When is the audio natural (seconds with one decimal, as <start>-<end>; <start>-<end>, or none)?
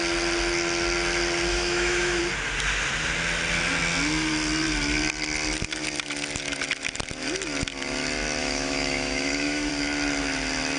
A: 0.0-1.5; 2.2-8.4; 9.7-10.8